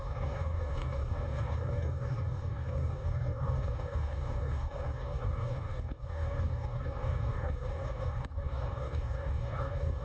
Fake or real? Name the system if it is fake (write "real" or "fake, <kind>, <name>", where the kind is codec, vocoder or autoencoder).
fake, codec, DAC